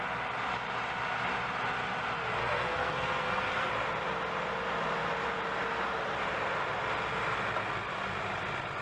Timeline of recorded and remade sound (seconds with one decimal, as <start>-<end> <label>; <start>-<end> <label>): 0.0-2.4 recorded; 2.4-3.7 remade; 3.7-8.8 recorded